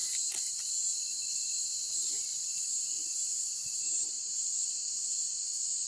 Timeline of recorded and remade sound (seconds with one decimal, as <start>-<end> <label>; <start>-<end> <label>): 0.0-0.6 remade; 0.6-1.1 recorded; 1.1-1.9 remade; 1.9-2.3 recorded; 2.3-5.3 remade; 5.3-5.9 recorded